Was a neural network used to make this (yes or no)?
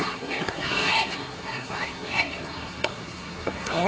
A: yes